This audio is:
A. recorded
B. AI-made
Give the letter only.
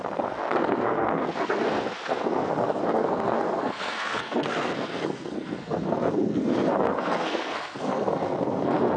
B